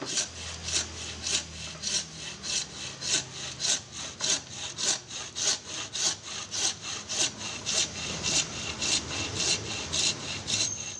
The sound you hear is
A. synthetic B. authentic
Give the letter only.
B